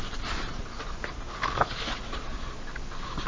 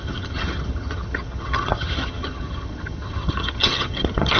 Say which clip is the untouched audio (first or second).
first